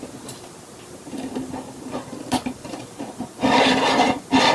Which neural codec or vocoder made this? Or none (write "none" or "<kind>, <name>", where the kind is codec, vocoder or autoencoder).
none